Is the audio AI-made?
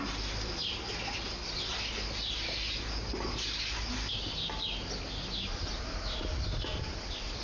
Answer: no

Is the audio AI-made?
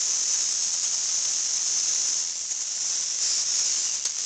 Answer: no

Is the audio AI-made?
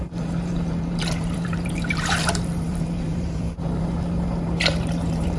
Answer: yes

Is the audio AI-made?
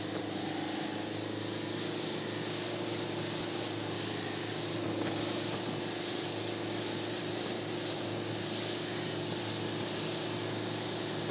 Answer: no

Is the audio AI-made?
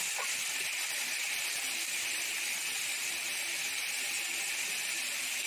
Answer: yes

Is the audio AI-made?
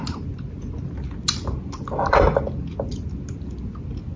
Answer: no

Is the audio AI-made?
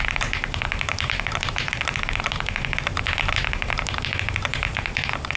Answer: yes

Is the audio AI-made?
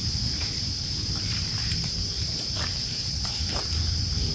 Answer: yes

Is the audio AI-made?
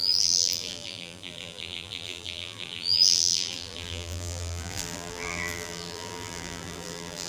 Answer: yes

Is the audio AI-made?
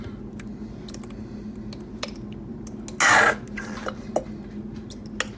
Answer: no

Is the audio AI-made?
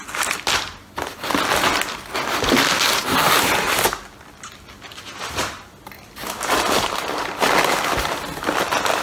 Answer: no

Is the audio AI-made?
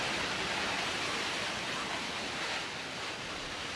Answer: no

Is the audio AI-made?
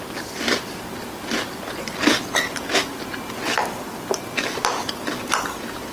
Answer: no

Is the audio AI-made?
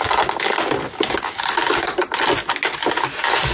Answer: no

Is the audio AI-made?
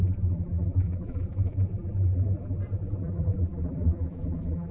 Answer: yes